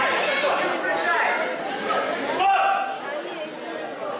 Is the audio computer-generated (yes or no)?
no